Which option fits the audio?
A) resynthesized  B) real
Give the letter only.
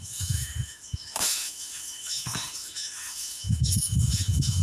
A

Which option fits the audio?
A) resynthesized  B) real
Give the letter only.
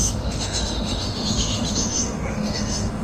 A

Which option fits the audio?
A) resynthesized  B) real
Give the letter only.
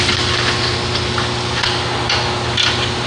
B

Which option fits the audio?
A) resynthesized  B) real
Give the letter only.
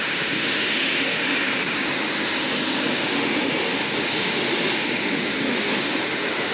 A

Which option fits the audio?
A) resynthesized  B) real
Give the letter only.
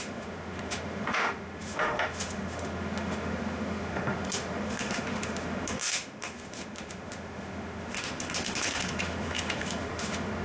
A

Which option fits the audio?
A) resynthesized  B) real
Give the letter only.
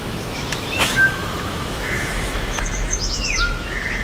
A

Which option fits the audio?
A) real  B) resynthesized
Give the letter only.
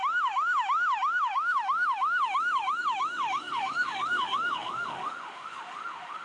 B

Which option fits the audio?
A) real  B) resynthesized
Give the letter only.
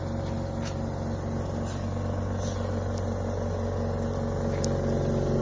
A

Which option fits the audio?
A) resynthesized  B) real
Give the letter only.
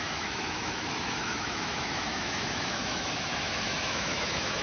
A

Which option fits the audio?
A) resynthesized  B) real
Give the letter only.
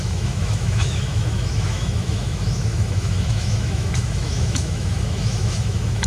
A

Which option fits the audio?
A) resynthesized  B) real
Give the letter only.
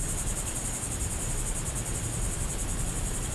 B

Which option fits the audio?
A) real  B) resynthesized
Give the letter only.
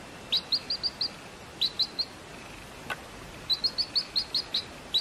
A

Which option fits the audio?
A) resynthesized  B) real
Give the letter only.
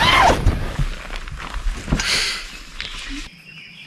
B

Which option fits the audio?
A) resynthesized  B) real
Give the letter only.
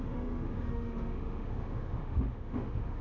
A